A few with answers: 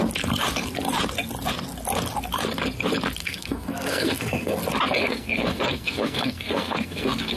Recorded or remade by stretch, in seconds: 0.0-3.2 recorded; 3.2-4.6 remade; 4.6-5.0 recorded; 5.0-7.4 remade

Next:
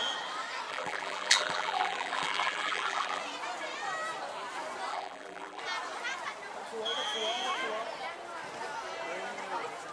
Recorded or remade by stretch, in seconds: 0.0-0.7 recorded; 0.7-3.2 remade; 3.2-4.9 recorded; 4.9-5.6 remade; 5.6-9.9 recorded

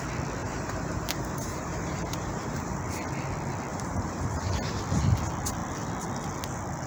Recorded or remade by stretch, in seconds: 0.0-0.4 recorded; 0.4-2.8 remade; 2.8-3.7 recorded; 3.7-4.8 remade; 4.8-6.9 recorded

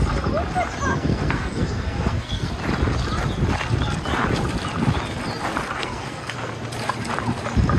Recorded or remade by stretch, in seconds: 0.0-0.9 recorded; 0.9-2.5 remade; 2.5-5.8 recorded; 5.8-6.5 remade; 6.5-7.8 recorded

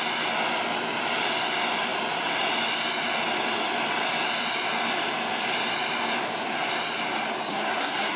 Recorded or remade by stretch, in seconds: 0.0-7.5 recorded; 7.5-8.2 remade